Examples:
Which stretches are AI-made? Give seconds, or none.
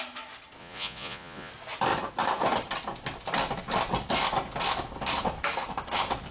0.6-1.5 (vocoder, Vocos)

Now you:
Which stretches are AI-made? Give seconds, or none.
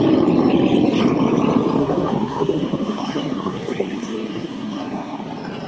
1.8-5.2 (codec, SNAC)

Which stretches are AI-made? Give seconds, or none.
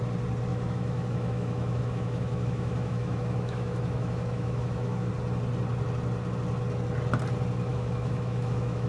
0.5-5.1 (autoencoder, DAC-VAE); 7.7-8.9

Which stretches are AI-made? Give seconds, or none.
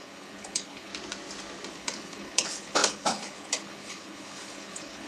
0.0-0.9 (codec, HILCodec); 1.7-5.1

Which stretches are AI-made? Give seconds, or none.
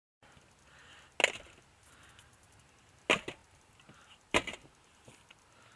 none